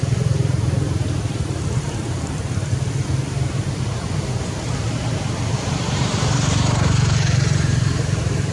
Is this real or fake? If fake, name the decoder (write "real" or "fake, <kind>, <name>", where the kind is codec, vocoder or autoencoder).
fake, vocoder, BigVGAN v2